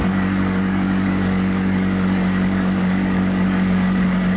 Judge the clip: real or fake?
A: fake